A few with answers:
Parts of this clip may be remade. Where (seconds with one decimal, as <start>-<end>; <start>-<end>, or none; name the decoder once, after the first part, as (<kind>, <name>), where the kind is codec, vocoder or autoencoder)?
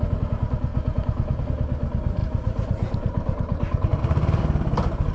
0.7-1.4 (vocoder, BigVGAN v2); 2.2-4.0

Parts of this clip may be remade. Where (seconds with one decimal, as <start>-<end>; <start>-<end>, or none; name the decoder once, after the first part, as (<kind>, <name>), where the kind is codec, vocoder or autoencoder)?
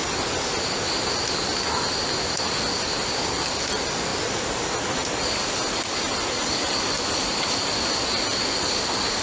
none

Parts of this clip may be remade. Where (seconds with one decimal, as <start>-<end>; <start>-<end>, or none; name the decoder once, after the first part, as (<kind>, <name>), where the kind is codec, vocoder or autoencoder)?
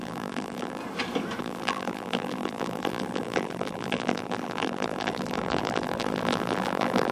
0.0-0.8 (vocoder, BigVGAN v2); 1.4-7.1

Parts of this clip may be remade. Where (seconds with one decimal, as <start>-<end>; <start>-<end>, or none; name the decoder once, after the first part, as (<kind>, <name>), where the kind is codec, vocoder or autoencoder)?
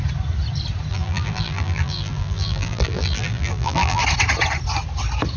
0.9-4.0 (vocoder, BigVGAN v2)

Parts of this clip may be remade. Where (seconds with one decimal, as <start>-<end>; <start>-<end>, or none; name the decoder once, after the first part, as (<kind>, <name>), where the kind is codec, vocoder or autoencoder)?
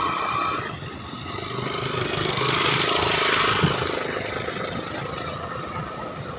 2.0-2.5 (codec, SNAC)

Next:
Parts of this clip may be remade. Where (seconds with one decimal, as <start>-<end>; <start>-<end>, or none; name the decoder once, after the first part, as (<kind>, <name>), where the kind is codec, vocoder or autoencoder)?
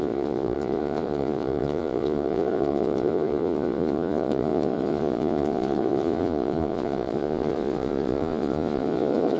0.0-9.4 (vocoder, Vocos)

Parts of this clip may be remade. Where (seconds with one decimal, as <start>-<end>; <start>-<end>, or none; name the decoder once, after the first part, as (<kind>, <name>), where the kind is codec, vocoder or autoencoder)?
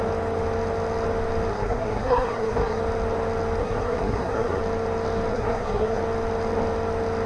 1.5-2.8 (codec, SNAC); 3.6-4.6; 5.3-6.0